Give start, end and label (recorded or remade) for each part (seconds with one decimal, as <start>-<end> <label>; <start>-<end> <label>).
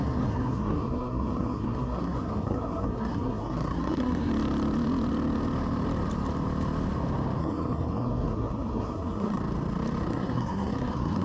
0.0-4.3 remade; 4.3-7.4 recorded; 7.4-9.4 remade; 9.4-10.1 recorded; 10.1-11.2 remade